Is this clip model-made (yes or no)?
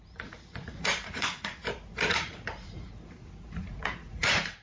yes